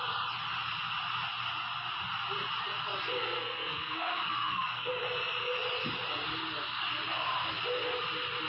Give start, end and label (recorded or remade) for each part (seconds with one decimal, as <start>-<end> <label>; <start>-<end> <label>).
0.0-3.2 recorded; 3.2-4.9 remade; 4.9-8.5 recorded

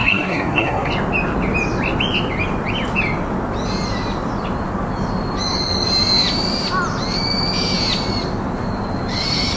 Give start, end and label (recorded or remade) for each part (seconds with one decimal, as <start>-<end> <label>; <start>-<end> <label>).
0.0-0.9 remade; 0.9-9.6 recorded

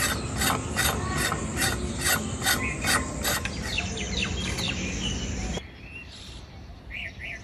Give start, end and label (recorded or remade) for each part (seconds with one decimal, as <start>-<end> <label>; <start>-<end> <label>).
0.0-7.4 recorded

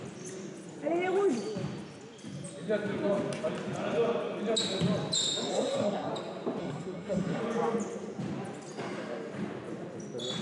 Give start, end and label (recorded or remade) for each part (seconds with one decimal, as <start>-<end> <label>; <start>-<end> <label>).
0.0-5.5 recorded; 5.5-6.1 remade; 6.1-6.6 recorded; 6.6-7.4 remade; 7.4-10.4 recorded

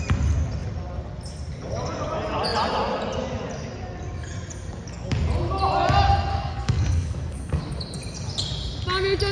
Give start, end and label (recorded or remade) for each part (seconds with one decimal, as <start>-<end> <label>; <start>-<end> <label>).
0.0-6.3 recorded; 6.3-7.6 remade; 7.6-9.3 recorded